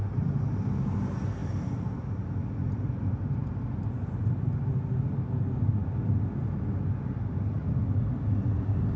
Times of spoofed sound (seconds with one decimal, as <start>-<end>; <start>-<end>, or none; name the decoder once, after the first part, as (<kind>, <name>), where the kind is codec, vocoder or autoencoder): 1.4-2.1 (vocoder, BigVGAN v2)